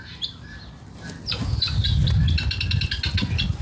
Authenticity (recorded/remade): recorded